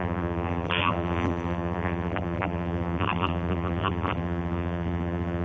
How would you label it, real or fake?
fake